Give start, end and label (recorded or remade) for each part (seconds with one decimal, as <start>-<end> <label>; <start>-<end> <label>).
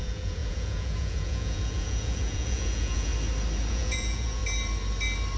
0.0-3.1 remade; 3.1-3.7 recorded; 3.7-4.4 remade; 4.4-5.4 recorded